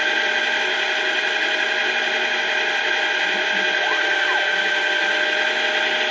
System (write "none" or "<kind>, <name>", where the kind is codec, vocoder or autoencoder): none